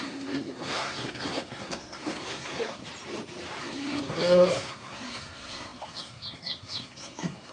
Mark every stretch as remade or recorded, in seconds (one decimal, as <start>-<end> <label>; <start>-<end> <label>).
0.0-2.8 remade; 2.8-3.6 recorded; 3.6-7.5 remade